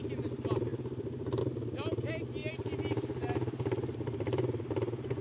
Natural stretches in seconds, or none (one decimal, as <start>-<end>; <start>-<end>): 0.0-5.2